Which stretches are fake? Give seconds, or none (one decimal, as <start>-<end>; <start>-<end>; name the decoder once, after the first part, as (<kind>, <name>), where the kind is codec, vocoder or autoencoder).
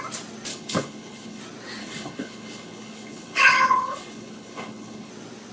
0.5-1.4 (codec, HILCodec); 1.8-5.1